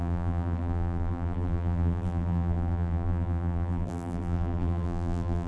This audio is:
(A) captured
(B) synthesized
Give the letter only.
B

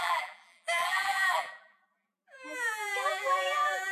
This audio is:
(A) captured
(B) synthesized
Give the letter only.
B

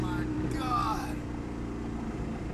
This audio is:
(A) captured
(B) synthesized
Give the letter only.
B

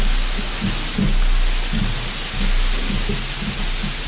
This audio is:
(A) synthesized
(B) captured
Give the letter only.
B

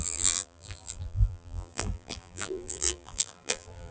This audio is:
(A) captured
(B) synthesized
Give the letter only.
B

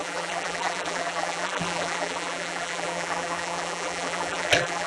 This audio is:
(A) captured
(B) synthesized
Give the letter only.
B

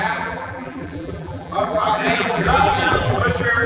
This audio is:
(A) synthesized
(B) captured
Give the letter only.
A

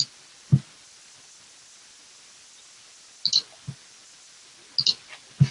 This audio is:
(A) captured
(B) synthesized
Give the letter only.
A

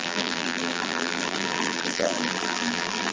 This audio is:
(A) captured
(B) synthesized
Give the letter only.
B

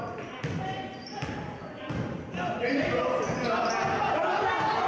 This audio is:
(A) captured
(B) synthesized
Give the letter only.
B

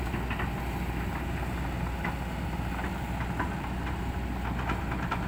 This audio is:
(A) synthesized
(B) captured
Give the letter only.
B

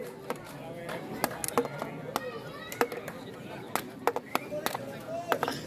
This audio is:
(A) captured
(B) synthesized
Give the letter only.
A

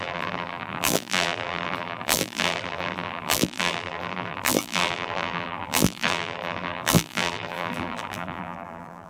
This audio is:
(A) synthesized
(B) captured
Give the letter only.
A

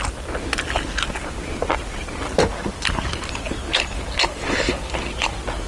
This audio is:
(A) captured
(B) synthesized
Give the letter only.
A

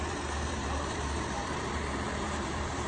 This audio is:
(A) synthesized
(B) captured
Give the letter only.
A